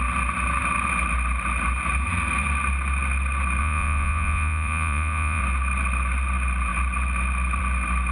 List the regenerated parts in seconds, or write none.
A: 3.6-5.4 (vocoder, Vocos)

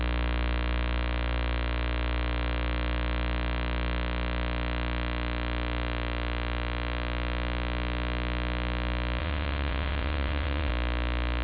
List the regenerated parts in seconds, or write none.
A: 9.2-10.7 (vocoder, WaveNeXt)

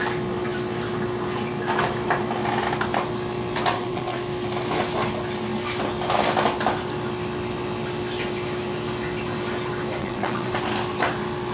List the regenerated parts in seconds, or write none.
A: 3.7-4.2 (vocoder, WaveNeXt); 10.0-10.5

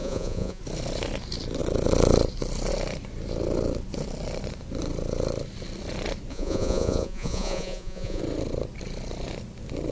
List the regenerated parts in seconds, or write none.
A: 0.0-0.6 (vocoder, Vocos); 6.3-8.2

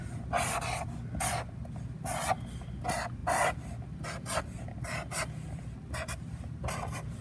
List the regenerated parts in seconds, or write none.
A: none

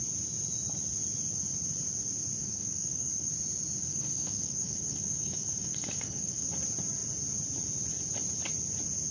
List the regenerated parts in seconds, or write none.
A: 2.4-3.3 (codec, DAC); 3.8-6.5

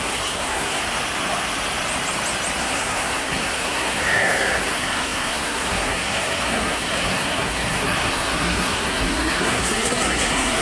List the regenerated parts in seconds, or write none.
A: 0.0-0.8 (codec, SNAC); 2.6-10.6